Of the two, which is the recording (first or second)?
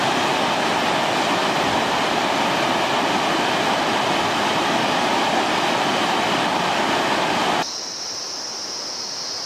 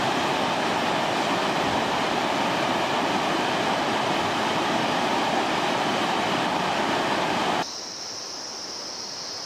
first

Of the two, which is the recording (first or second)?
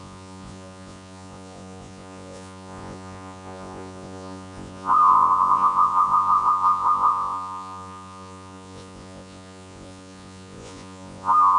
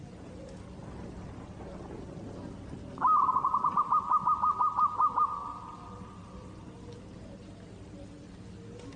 second